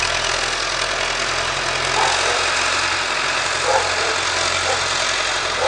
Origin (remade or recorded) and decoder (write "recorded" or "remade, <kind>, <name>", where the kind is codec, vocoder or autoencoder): recorded